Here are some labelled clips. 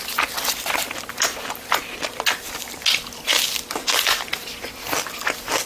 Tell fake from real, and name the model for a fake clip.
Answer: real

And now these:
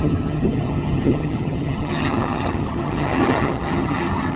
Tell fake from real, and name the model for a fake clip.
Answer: fake, vocoder, HiFi-GAN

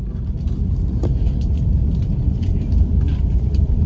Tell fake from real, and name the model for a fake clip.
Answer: fake, vocoder, BigVGAN v2